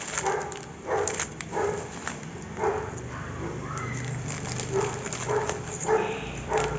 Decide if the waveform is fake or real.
real